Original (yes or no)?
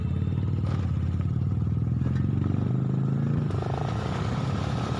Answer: yes